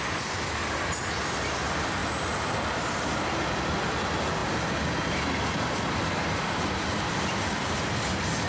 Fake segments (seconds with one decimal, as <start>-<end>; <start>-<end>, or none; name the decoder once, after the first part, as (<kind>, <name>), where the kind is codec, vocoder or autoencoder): none